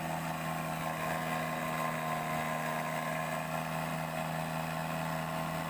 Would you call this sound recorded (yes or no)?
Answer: yes